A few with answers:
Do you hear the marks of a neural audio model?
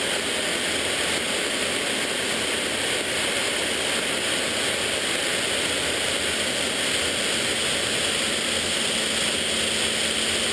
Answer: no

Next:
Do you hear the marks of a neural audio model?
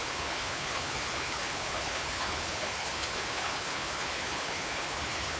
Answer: yes